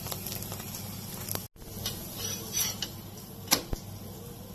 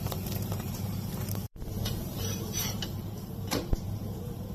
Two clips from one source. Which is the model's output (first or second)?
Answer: second